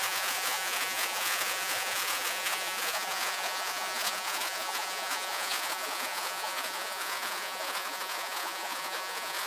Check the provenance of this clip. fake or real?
fake